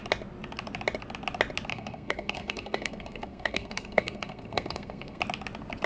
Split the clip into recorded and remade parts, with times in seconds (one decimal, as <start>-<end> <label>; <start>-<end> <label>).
0.0-1.7 recorded; 1.7-5.2 remade; 5.2-5.9 recorded